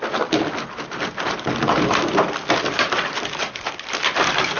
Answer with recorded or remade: recorded